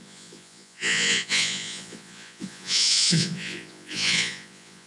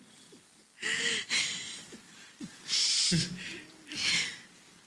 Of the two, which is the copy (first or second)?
first